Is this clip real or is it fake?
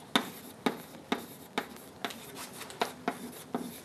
real